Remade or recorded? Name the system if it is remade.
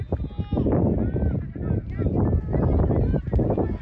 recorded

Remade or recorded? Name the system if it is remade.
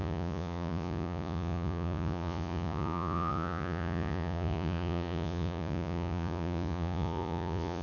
remade, vocoder, Vocos